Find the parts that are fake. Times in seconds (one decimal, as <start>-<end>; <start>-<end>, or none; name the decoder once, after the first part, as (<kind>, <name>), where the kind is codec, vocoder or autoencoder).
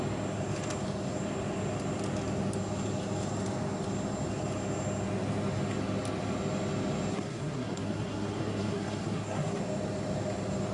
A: 7.1-9.6 (codec, SNAC)